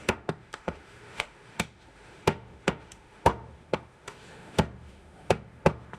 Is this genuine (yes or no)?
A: no